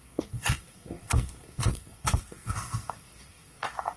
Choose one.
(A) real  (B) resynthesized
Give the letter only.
B